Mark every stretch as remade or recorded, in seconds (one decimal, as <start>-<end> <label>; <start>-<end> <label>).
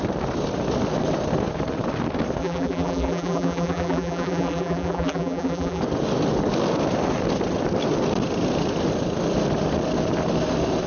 0.0-2.4 recorded; 2.4-5.8 remade; 5.8-10.9 recorded